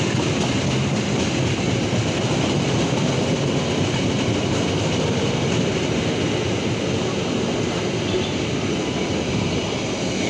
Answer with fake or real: real